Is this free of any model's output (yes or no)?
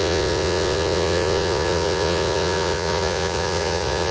no